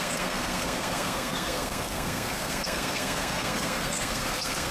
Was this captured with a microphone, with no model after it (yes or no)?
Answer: no